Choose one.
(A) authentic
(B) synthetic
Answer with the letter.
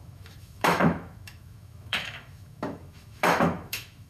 B